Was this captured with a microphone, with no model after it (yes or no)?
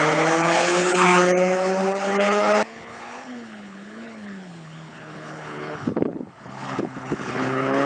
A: no